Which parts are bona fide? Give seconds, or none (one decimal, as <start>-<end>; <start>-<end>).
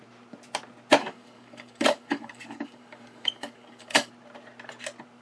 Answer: 0.0-1.0; 4.1-5.2